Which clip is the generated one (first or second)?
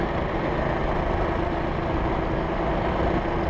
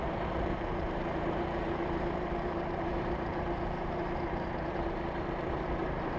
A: second